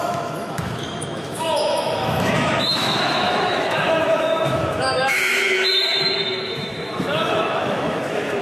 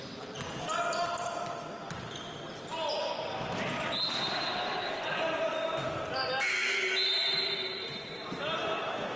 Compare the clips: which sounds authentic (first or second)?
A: second